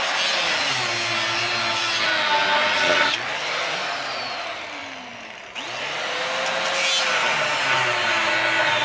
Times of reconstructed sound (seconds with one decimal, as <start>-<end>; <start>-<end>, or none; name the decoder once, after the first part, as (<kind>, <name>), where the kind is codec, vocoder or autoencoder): none